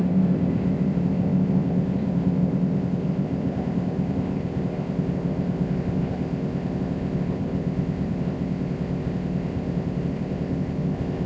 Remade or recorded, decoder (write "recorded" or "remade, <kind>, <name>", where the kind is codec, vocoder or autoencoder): remade, codec, ZipCodec